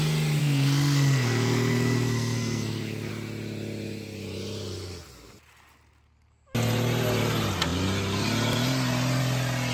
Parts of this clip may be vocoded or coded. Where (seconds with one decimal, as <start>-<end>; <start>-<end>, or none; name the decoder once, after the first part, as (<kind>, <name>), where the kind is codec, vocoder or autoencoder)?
0.4-3.1 (codec, SNAC)